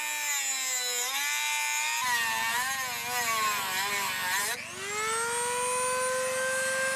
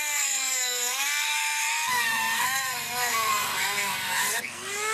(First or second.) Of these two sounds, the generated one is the second